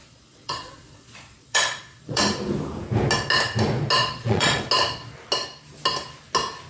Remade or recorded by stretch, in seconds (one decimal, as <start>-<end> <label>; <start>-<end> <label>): 0.0-2.2 remade; 2.2-4.0 recorded; 4.0-4.6 remade; 4.6-6.7 recorded